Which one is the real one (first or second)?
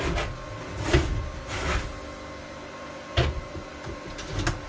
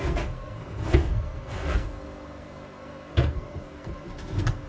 first